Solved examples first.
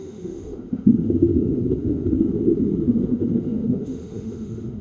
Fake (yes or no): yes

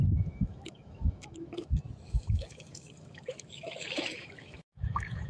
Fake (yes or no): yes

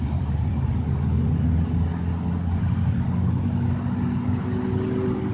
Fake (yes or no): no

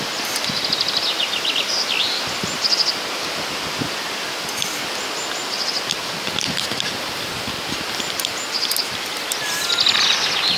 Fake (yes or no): no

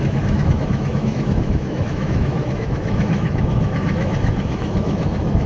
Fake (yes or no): yes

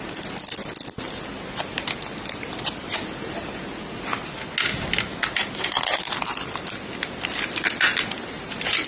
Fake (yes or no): no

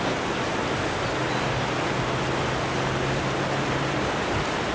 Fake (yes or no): no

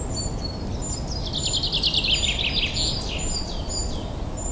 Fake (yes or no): no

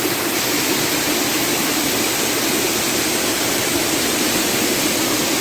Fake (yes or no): no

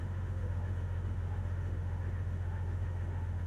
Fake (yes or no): yes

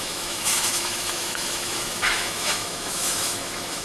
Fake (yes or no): yes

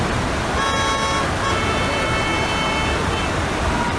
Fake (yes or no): no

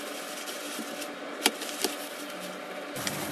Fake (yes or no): no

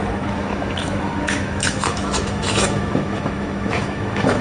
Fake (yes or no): yes